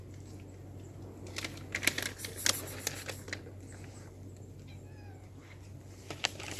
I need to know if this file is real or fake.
real